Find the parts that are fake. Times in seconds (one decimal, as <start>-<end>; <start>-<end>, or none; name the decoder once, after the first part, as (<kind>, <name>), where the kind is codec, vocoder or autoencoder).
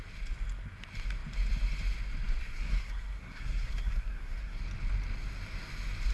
2.4-4.6 (codec, SNAC)